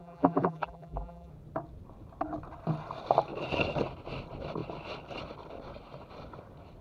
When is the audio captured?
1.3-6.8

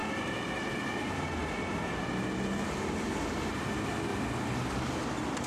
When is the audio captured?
0.0-1.4; 2.0-4.1; 5.0-5.5

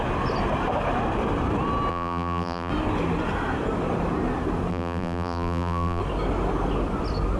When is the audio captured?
0.0-1.9; 2.7-4.7; 6.0-7.4

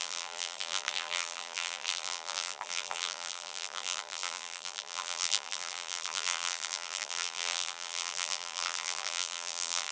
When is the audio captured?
none

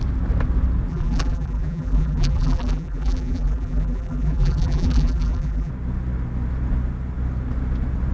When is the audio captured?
0.0-0.9; 5.7-8.1

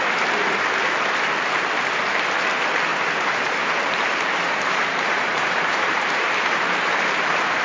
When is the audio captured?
0.0-2.9

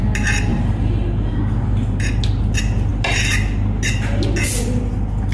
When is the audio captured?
0.0-0.5; 1.3-5.3